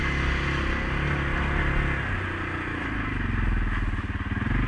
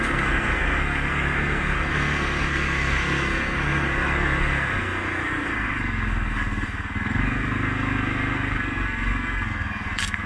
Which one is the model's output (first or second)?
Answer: second